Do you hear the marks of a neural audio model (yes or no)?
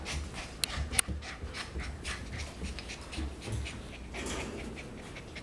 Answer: no